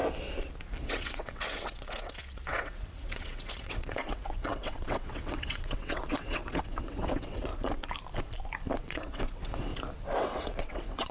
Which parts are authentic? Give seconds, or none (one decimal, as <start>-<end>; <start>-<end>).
0.0-0.8; 7.5-8.8; 9.7-10.2